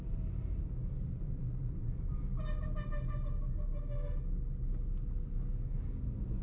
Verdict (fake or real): real